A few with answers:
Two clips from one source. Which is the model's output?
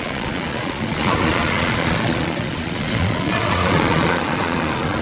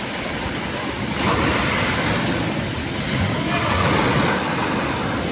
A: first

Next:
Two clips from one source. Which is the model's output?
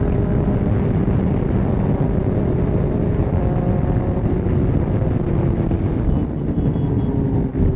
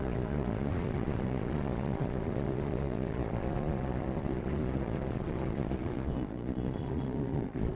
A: second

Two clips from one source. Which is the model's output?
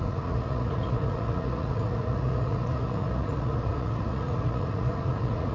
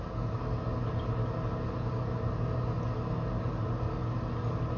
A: first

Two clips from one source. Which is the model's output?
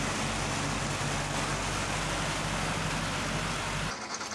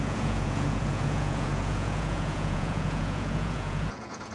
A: second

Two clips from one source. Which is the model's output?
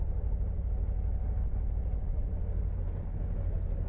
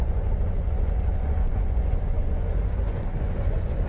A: second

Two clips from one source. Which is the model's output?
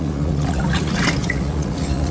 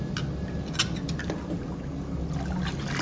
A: first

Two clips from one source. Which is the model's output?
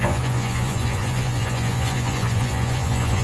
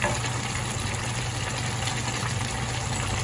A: first